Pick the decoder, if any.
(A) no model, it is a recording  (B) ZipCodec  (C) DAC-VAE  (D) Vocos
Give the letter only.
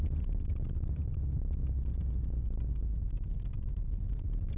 A